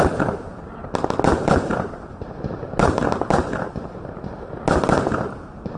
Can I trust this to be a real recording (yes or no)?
yes